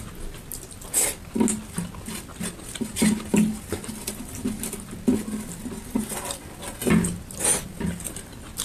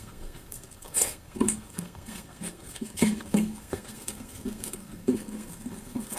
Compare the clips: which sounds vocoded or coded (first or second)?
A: second